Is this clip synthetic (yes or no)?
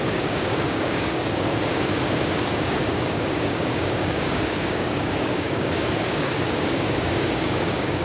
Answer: yes